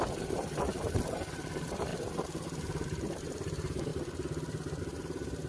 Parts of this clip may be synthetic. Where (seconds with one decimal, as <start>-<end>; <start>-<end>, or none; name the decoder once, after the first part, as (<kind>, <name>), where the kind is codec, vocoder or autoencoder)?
0.0-5.5 (vocoder, BigVGAN v2)